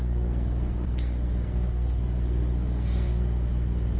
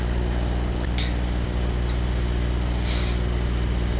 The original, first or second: second